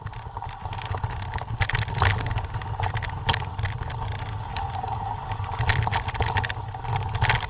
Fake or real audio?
real